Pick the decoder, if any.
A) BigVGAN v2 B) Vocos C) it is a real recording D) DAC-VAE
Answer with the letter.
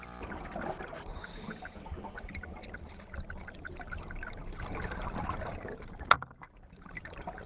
C